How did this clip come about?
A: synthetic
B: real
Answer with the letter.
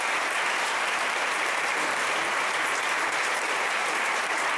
A